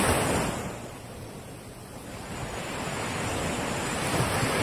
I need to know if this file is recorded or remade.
recorded